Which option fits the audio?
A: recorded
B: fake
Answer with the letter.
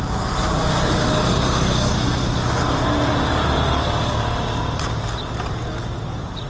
A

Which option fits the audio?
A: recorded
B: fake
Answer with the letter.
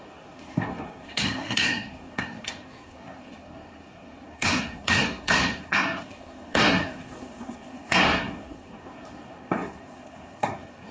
B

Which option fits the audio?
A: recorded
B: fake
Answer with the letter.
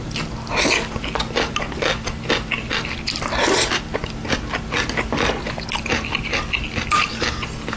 A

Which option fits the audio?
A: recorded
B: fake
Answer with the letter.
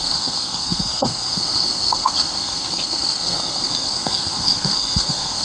B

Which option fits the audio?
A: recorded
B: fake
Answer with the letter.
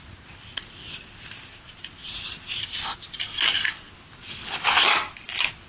A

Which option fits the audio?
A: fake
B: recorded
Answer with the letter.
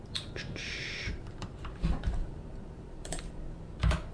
A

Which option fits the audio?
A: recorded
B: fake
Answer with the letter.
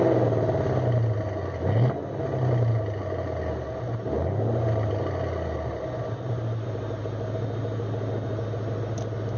A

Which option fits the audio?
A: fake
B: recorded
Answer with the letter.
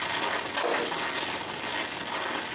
B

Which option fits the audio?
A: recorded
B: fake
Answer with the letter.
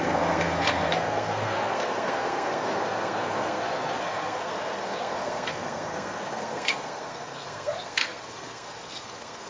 B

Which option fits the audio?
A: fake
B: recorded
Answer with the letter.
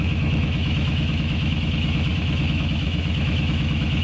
A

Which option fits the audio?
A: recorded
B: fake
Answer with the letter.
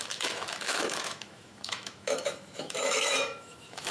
B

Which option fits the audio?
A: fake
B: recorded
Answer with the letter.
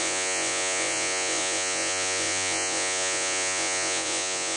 A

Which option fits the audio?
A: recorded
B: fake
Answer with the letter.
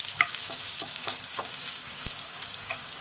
B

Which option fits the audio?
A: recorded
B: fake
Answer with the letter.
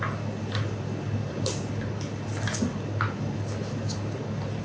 A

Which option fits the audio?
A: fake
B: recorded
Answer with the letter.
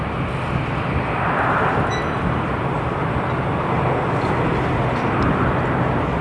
B